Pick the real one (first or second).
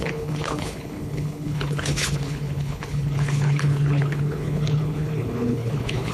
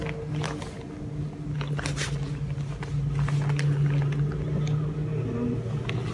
second